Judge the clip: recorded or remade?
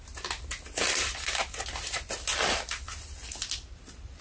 recorded